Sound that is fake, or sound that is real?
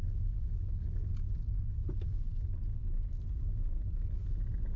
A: real